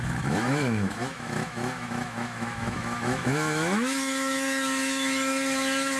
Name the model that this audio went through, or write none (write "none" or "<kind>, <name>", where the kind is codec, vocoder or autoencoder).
autoencoder, DAC-VAE